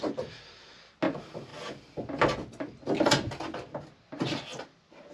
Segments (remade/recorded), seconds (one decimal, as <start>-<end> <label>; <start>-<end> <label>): 0.0-5.1 recorded